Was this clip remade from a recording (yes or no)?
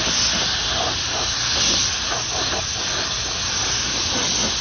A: no